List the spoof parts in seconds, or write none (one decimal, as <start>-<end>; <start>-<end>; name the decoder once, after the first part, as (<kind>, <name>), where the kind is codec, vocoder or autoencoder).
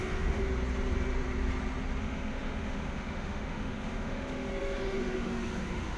0.0-0.5 (autoencoder, DAC-VAE); 2.0-6.0